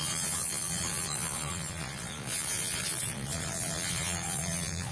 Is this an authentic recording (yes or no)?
no